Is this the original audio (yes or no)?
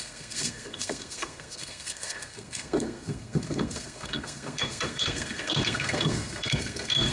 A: no